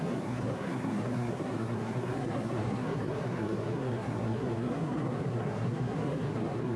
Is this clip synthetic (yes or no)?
yes